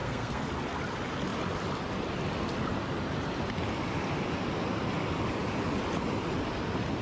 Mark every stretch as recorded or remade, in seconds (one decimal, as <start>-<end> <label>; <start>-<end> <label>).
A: 0.0-0.5 remade; 0.5-7.0 recorded